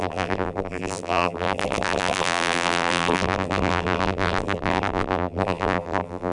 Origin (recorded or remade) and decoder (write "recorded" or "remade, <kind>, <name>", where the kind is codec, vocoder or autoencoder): remade, vocoder, BigVGAN v2